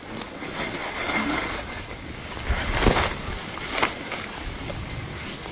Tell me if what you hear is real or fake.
real